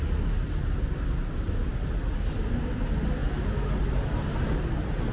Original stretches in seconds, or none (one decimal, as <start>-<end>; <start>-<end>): 0.0-5.1

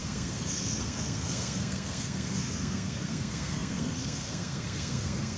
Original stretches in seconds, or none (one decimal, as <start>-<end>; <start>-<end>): none

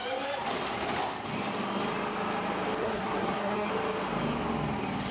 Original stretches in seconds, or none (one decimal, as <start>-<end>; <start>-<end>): 0.0-2.8; 3.7-5.1

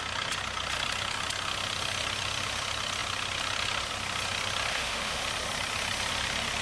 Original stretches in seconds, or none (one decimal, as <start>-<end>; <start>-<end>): 0.0-4.7; 5.2-6.6

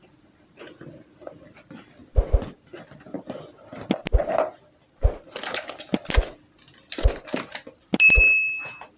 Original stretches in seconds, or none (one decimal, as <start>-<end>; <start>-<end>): 0.0-9.0

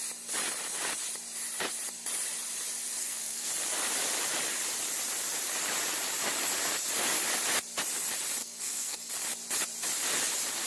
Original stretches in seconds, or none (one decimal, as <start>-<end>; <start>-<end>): 0.0-3.0; 3.5-8.4; 9.1-10.7

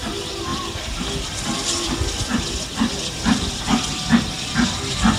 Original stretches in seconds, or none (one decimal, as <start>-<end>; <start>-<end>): 0.0-0.5; 1.9-2.7; 3.7-5.2